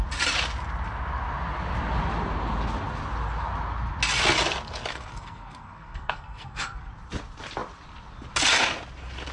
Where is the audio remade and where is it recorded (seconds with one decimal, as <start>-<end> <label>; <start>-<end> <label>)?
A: 0.0-4.9 recorded; 4.9-6.9 remade; 6.9-9.3 recorded